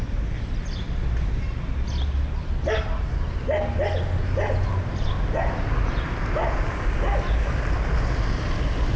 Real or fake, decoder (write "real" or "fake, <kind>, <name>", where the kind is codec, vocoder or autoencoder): real